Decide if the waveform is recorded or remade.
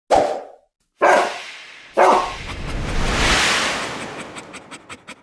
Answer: recorded